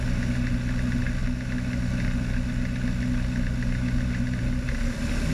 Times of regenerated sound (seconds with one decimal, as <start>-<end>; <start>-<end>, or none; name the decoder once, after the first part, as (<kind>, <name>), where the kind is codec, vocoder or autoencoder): none